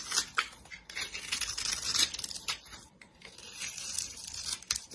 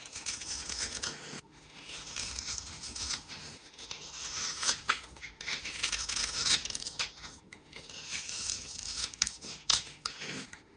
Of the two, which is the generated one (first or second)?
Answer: second